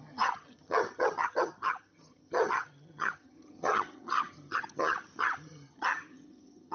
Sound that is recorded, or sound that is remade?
remade